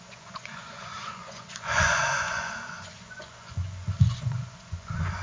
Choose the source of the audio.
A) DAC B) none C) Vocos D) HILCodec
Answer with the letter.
C